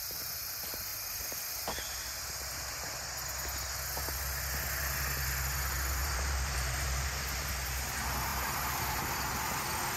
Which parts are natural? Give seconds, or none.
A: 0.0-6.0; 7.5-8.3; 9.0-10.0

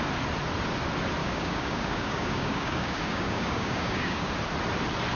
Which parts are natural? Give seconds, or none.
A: 0.0-1.2; 4.3-5.2